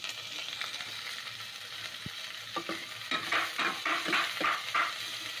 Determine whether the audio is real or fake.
fake